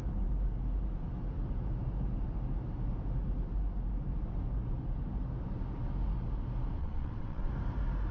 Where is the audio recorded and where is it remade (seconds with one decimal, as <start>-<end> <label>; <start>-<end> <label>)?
0.0-6.8 recorded; 6.8-7.5 remade; 7.5-8.1 recorded